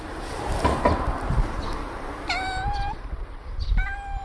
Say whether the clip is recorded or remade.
remade